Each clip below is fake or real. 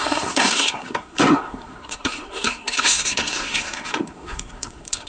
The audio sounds fake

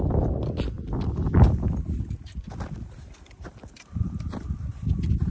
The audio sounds real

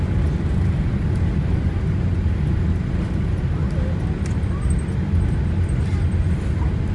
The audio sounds real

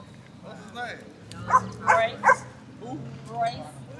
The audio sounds real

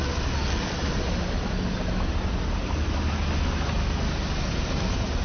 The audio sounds real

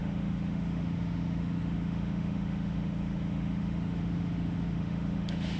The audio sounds fake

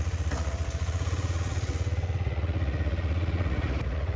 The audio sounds fake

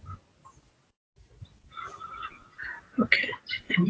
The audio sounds real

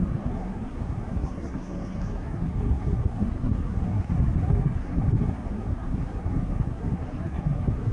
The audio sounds fake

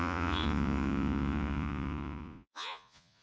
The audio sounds fake